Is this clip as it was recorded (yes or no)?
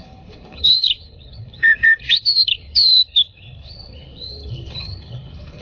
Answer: no